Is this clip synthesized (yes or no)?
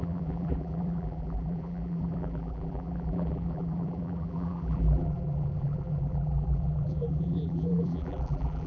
yes